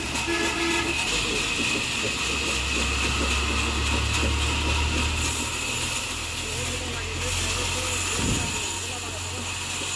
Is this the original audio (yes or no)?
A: yes